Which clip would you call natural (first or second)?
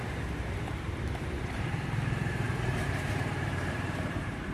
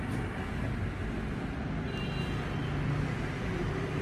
second